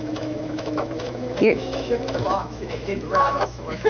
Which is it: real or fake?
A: fake